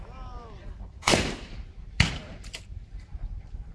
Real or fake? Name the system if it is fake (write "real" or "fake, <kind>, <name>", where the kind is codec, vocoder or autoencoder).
fake, vocoder, BigVGAN v2